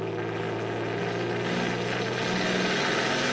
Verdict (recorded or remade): recorded